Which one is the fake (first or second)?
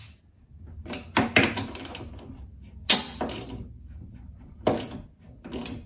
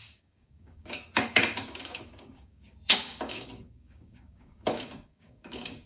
second